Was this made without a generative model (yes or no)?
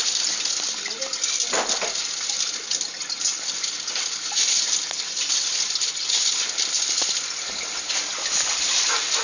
yes